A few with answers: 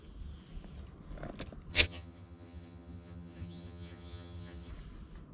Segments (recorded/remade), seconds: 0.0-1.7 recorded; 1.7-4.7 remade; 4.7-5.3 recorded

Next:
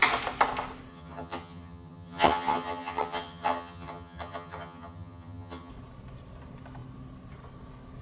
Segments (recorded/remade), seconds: 0.0-0.9 recorded; 0.9-5.7 remade; 5.7-8.0 recorded

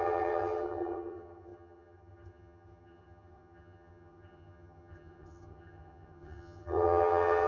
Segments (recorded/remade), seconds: 0.0-7.5 remade

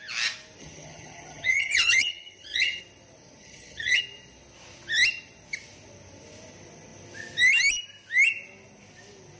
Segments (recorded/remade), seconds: 0.0-0.6 recorded; 0.6-2.8 remade; 2.8-3.4 recorded; 3.4-4.0 remade; 4.0-9.4 recorded

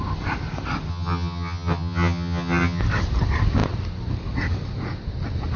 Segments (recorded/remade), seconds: 0.0-0.9 recorded; 0.9-2.8 remade; 2.8-5.6 recorded

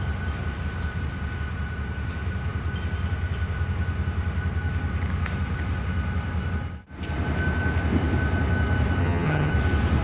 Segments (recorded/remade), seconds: 0.0-9.0 recorded; 9.0-9.5 remade; 9.5-10.0 recorded